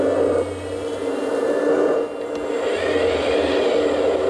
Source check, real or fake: real